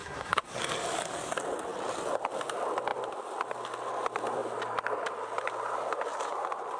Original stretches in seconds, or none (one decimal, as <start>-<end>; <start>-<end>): 0.6-6.8